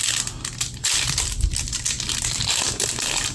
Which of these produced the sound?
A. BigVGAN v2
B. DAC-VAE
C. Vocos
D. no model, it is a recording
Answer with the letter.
A